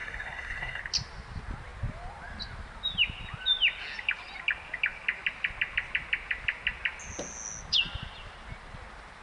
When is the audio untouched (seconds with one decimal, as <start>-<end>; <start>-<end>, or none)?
0.8-9.2